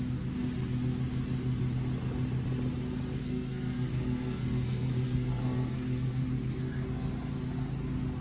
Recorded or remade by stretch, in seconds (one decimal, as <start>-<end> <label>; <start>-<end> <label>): 0.0-3.2 recorded; 3.2-7.1 remade; 7.1-8.2 recorded